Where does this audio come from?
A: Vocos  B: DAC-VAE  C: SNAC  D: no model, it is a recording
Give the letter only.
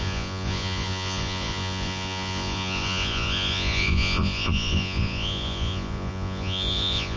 A